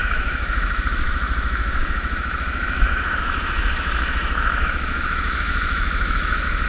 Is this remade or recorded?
remade